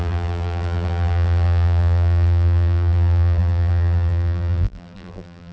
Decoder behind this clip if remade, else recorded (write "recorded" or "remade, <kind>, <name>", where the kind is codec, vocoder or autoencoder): remade, vocoder, BigVGAN v2